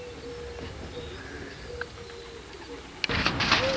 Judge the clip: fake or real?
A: real